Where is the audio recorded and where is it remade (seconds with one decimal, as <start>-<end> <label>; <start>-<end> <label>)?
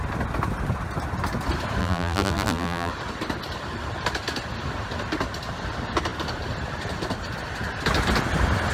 0.0-1.8 recorded; 1.8-2.9 remade; 2.9-8.7 recorded